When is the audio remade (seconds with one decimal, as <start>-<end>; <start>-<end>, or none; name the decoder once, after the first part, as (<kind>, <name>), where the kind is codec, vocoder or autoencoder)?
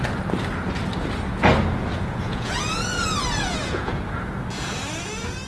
1.9-2.5 (vocoder, Vocos); 3.4-4.0